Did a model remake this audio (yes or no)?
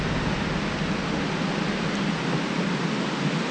no